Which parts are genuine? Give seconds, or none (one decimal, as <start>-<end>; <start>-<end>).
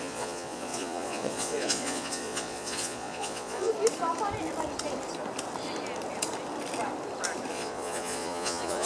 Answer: 3.7-7.5